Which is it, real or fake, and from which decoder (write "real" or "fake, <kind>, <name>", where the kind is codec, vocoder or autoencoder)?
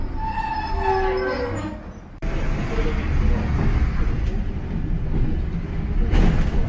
real